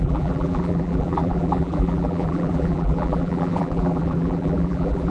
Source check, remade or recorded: remade